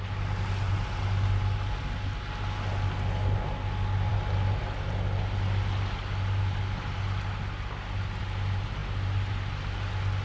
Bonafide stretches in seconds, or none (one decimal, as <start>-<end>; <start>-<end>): 0.0-10.2